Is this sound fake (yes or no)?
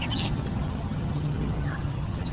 yes